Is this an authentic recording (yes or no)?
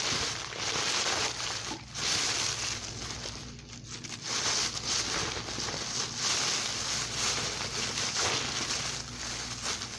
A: yes